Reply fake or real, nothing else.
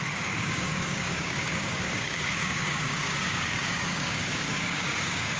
fake